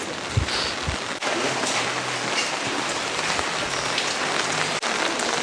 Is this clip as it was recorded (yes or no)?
yes